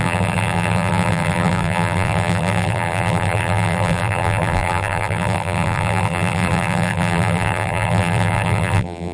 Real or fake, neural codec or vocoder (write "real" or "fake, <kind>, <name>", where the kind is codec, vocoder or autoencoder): fake, vocoder, BigVGAN v2